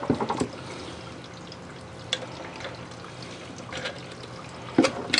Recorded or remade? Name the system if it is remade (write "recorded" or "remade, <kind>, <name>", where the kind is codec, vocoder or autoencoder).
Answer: recorded